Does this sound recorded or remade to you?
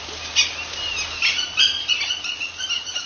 recorded